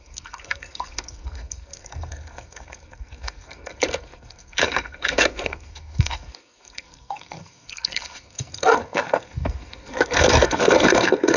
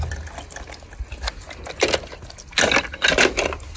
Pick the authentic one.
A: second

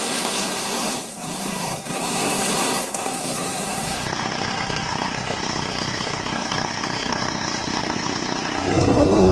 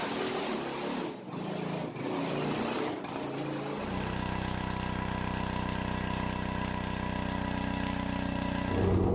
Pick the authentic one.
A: second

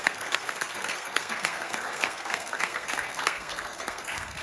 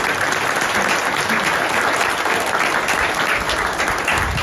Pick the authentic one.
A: second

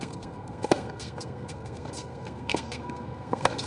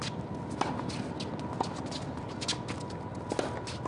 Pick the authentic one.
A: second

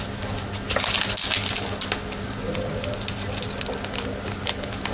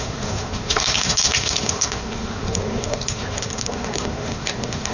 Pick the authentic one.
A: first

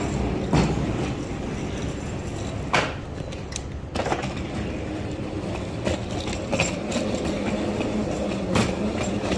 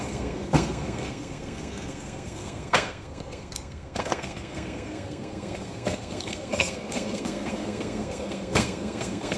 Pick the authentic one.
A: first